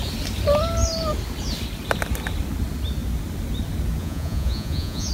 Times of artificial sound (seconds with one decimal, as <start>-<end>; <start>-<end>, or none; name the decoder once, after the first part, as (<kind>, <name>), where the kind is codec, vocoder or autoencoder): 4.0-5.1 (vocoder, Vocos)